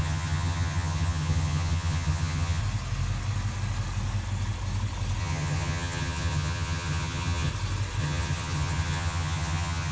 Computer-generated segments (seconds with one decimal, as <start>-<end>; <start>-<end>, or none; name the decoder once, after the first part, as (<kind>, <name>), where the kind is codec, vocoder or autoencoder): 0.0-2.6 (vocoder, HiFi-GAN); 5.2-7.5; 8.0-9.9